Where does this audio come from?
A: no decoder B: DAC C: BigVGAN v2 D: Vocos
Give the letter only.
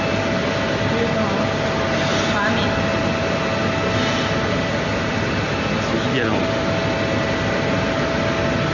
A